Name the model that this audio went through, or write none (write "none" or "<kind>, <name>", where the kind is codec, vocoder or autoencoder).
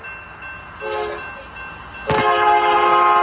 none